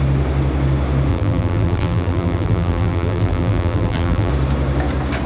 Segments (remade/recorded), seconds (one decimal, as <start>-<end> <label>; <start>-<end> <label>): 0.0-1.1 recorded; 1.1-4.3 remade; 4.3-5.3 recorded